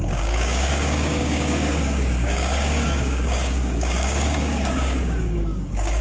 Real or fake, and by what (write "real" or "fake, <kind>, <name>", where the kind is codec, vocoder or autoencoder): fake, codec, DAC